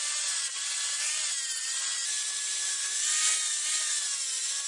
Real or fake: real